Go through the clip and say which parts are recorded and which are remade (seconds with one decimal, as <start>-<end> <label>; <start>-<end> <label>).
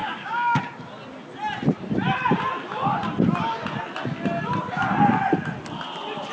0.0-0.6 remade; 0.6-6.3 recorded